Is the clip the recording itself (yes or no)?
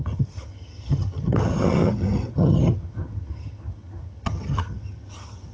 no